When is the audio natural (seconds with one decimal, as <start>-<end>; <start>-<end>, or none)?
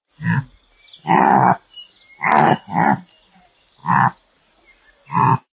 0.0-5.6